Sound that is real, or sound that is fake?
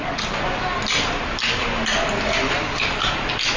real